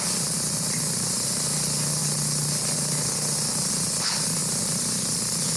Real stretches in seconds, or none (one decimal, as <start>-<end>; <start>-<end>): 0.0-5.6